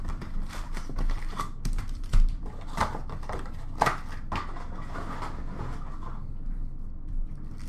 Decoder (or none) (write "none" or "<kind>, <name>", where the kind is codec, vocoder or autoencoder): none